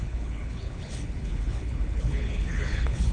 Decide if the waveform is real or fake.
fake